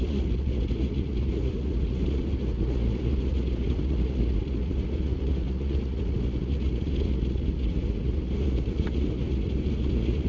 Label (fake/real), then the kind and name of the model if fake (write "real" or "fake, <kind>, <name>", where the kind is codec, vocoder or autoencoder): fake, vocoder, Vocos